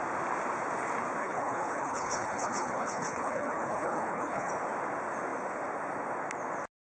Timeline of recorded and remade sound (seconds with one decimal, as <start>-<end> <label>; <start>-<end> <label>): 0.0-1.2 recorded; 1.2-4.5 remade; 4.5-6.8 recorded